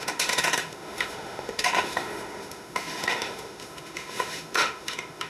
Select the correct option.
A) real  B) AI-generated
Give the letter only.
B